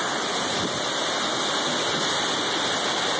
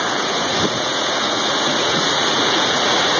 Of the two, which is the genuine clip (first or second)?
first